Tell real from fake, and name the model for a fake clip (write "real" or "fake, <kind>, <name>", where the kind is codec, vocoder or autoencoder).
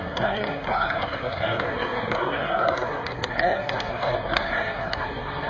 fake, codec, SNAC